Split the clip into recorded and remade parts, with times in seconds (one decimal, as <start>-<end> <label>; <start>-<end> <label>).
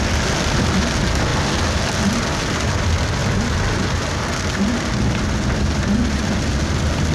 0.0-7.1 recorded